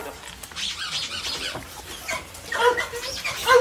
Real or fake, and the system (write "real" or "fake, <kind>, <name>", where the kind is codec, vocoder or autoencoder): real